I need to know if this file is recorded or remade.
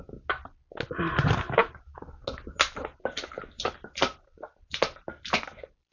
recorded